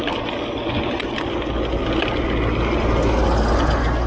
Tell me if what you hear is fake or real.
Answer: real